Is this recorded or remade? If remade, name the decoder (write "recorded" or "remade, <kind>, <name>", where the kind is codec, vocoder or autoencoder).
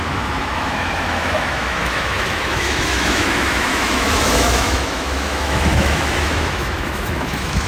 remade, autoencoder, DAC-VAE